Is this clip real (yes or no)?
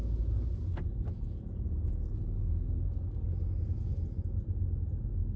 yes